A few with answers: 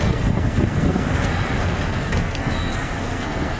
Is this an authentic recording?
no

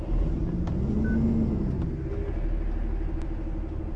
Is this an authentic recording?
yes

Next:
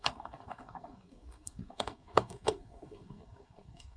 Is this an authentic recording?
no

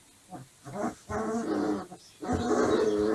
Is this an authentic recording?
yes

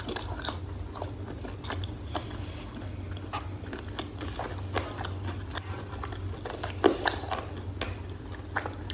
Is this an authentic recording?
yes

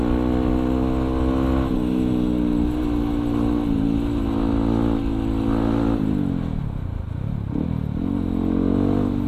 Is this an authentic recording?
yes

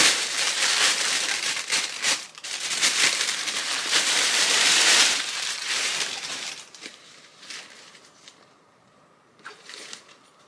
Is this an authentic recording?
no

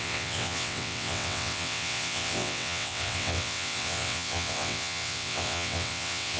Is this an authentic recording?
no